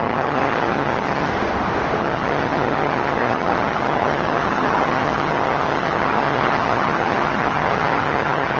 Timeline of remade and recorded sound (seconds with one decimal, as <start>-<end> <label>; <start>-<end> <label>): 0.0-1.3 remade; 1.3-2.0 recorded; 2.0-8.6 remade